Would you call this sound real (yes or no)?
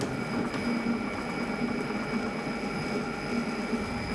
yes